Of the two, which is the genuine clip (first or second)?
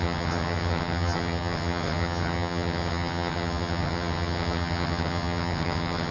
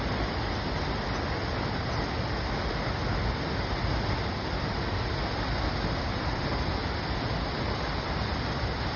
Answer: second